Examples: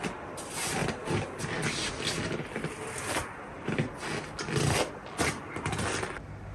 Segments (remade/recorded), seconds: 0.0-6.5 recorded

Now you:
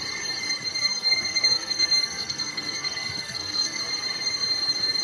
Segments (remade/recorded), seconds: 0.0-0.8 recorded; 0.8-3.8 remade; 3.8-5.0 recorded